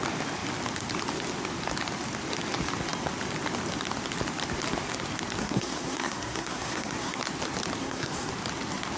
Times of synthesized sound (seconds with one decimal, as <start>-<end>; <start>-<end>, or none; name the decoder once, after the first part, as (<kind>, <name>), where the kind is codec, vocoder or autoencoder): 5.4-7.2 (codec, SNAC); 7.8-8.3